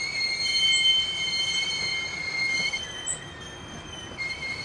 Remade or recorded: recorded